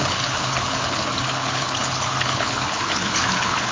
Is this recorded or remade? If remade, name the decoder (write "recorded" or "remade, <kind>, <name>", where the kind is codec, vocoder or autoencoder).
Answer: remade, codec, HILCodec